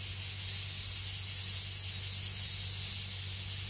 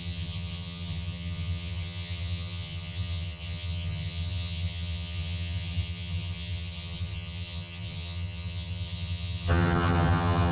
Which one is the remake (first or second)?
second